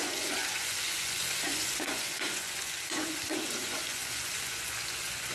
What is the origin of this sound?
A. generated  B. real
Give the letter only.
A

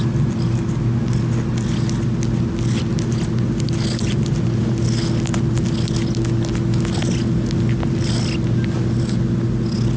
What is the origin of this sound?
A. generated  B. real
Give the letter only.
B